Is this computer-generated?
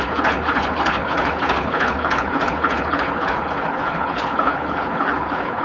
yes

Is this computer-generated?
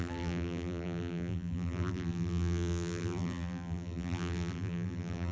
yes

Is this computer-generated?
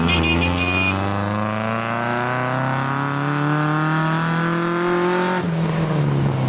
no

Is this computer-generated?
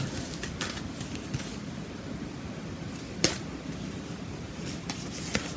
no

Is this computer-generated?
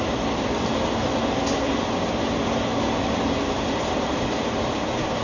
no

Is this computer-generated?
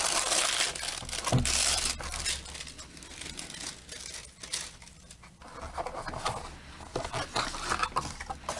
no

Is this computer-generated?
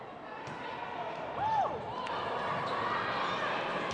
yes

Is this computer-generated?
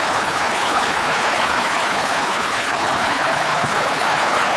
yes